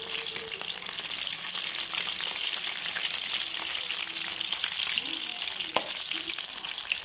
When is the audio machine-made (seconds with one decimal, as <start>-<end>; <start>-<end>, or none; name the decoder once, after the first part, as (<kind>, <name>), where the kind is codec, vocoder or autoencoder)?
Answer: none